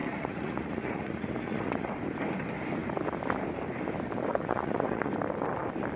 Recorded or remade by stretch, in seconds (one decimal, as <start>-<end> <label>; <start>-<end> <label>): 0.0-1.9 remade; 1.9-4.3 recorded; 4.3-5.1 remade; 5.1-6.0 recorded